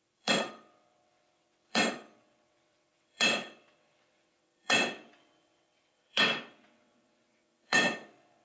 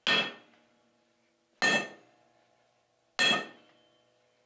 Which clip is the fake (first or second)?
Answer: first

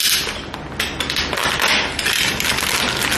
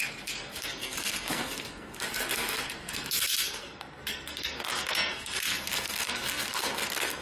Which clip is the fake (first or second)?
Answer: second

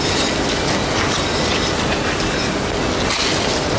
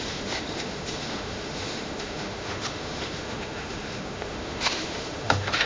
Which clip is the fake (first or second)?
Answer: second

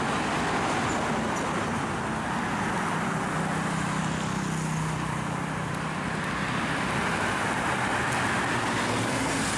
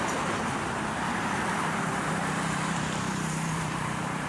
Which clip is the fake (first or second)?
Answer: second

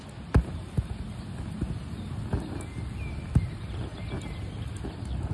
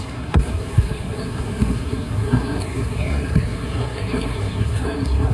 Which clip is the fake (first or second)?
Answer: second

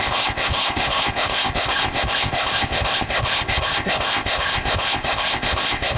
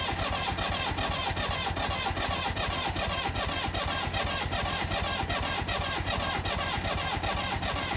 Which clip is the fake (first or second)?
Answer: first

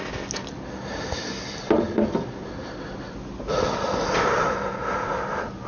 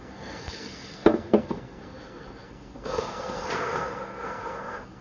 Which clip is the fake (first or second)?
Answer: second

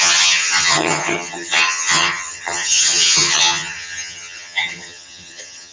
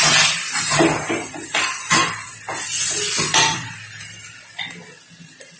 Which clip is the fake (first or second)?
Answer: first